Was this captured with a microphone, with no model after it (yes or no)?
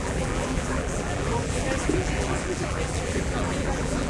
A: no